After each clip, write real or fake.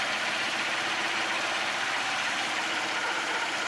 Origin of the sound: fake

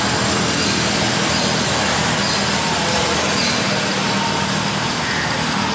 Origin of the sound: real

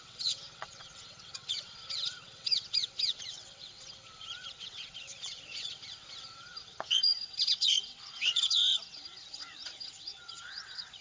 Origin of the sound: fake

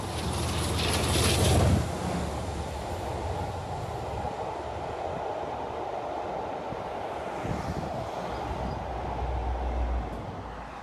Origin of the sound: real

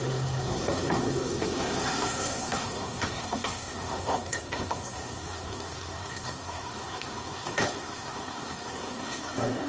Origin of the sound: fake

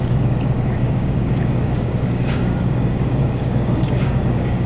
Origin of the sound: fake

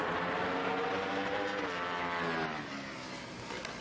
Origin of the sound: real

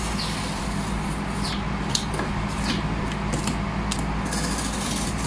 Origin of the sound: real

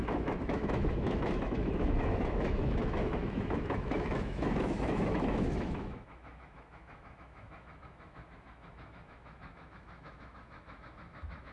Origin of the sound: fake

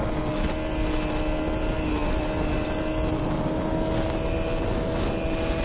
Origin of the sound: real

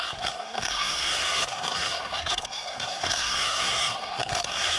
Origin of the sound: fake